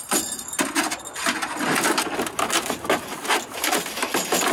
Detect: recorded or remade recorded